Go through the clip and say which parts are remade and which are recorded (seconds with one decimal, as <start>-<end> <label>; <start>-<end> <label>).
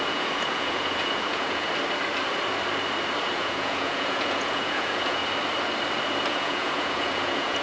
0.0-1.7 remade; 1.7-3.3 recorded; 3.3-5.2 remade; 5.2-6.3 recorded; 6.3-7.6 remade